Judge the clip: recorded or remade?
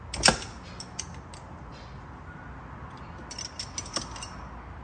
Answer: recorded